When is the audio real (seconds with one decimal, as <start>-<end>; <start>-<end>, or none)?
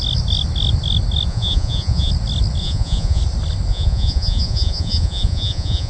0.0-1.3; 2.1-2.6; 3.2-3.7